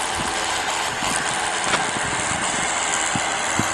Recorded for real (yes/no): yes